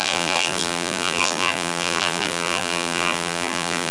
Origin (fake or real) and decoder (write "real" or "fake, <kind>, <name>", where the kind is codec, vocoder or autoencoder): fake, vocoder, BigVGAN v2